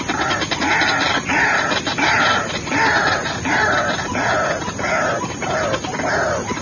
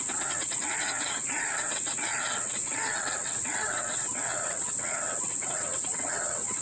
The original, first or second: first